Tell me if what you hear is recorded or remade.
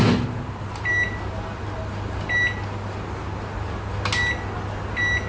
recorded